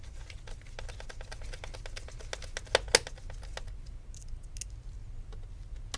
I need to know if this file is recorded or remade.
recorded